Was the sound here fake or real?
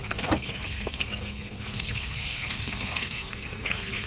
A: fake